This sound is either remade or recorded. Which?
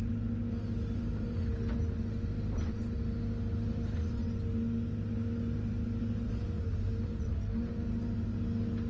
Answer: recorded